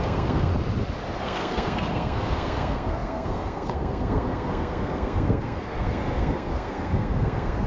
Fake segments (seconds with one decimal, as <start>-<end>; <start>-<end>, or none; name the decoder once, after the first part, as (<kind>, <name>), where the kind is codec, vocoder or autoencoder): 0.0-0.5 (codec, SNAC); 1.2-7.7